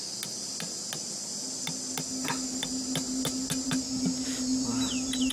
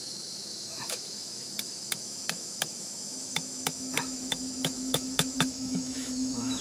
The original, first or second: first